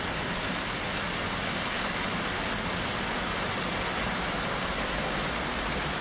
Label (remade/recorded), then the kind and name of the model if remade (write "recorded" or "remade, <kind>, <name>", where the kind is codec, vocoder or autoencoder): recorded